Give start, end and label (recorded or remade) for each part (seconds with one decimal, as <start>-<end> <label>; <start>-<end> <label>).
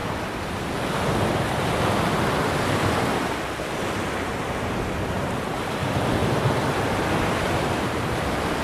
0.0-8.6 recorded